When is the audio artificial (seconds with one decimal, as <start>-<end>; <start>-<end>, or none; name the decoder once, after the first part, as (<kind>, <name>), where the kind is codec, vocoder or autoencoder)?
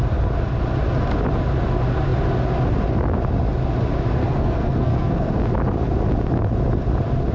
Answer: 4.2-5.3 (codec, SNAC)